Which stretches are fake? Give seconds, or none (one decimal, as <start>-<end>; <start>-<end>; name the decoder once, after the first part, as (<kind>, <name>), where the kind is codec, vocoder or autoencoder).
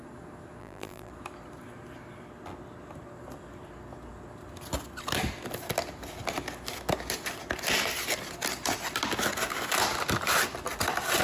0.6-1.1 (vocoder, BigVGAN v2)